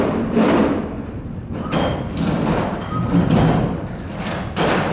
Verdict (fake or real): real